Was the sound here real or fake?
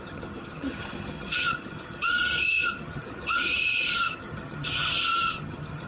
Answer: fake